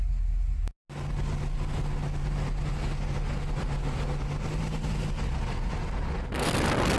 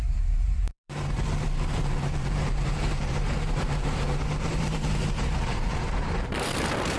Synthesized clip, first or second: second